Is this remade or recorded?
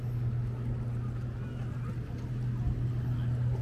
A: recorded